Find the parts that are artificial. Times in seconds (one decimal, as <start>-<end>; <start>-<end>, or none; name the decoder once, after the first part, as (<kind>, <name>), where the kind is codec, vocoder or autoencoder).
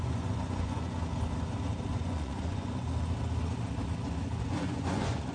0.0-1.0 (vocoder, Vocos); 1.9-2.9; 4.5-5.3